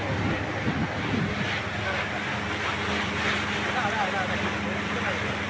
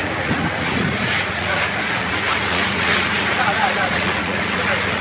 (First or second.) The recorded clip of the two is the first